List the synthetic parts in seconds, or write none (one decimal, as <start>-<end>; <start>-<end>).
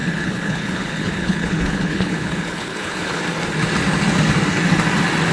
0.0-3.2